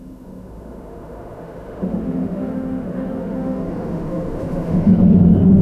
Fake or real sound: fake